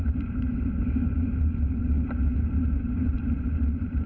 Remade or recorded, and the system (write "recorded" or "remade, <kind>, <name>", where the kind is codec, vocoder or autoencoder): remade, vocoder, BigVGAN v2